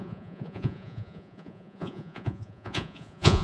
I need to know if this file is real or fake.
fake